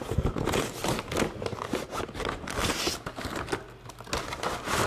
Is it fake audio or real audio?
real